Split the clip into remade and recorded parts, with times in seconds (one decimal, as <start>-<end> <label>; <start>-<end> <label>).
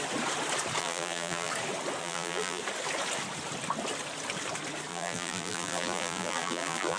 0.0-0.8 recorded; 0.8-1.5 remade; 1.5-2.0 recorded; 2.0-2.6 remade; 2.6-4.9 recorded; 4.9-7.0 remade